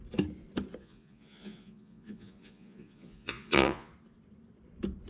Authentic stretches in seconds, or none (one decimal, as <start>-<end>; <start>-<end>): 0.0-0.8; 3.9-5.1